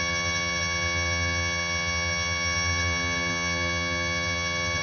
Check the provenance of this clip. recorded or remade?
remade